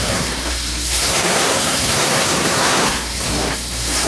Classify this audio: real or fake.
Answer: fake